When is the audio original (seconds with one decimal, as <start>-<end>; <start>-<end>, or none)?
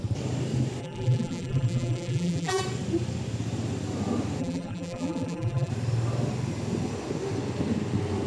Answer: 0.0-0.8; 2.6-4.4; 5.7-8.3